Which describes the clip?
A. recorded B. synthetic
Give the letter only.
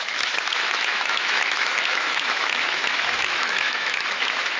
B